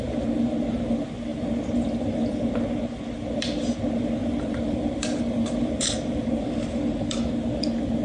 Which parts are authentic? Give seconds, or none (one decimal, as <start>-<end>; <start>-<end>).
0.0-4.2; 6.3-8.0